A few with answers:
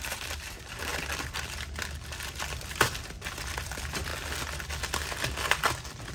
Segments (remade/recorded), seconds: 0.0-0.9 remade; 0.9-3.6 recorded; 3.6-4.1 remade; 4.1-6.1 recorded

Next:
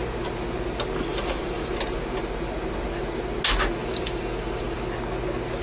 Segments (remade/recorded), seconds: 0.0-1.1 recorded; 1.1-1.7 remade; 1.7-3.8 recorded; 3.8-4.9 remade; 4.9-5.6 recorded

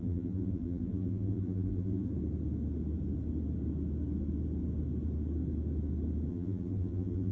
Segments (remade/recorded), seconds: 0.0-2.1 remade; 2.1-6.3 recorded; 6.3-7.3 remade

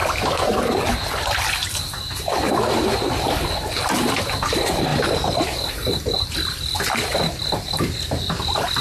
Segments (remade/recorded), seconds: 0.0-3.1 remade; 3.1-4.9 recorded; 4.9-8.8 remade

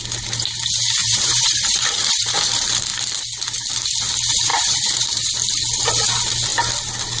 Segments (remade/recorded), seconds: 0.0-1.0 recorded; 1.0-2.4 remade; 2.4-4.5 recorded; 4.5-5.3 remade; 5.3-7.2 recorded

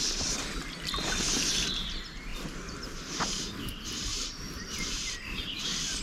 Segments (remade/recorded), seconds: 0.0-2.3 recorded; 2.3-3.4 remade; 3.4-4.1 recorded; 4.1-5.6 remade; 5.6-6.0 recorded